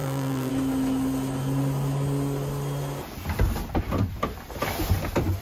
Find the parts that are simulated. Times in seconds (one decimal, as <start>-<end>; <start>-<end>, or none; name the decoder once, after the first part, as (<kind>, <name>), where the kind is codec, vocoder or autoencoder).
0.0-0.5 (vocoder, BigVGAN v2)